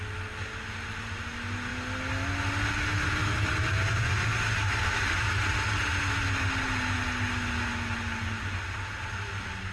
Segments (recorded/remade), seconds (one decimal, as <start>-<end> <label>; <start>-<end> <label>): 0.0-9.7 recorded